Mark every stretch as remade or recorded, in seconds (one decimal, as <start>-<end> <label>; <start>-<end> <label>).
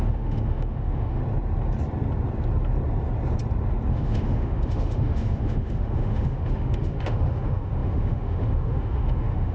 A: 0.0-1.2 remade; 1.2-3.9 recorded; 3.9-9.5 remade